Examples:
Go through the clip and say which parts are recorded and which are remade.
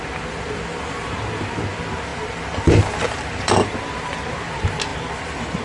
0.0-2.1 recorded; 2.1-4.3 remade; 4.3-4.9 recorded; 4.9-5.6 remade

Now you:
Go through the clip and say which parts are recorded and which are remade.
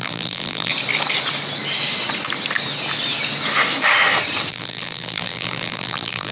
0.0-0.7 remade; 0.7-4.5 recorded; 4.5-6.3 remade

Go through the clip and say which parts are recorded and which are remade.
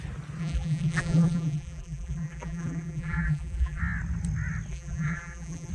0.0-0.4 recorded; 0.4-3.8 remade; 3.8-4.7 recorded; 4.7-5.7 remade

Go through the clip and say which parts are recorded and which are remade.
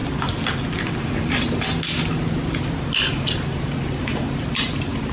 0.0-3.1 recorded; 3.1-5.1 remade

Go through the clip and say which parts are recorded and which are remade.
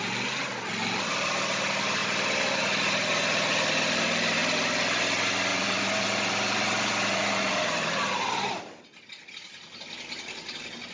0.0-5.5 recorded; 5.5-8.6 remade; 8.6-10.9 recorded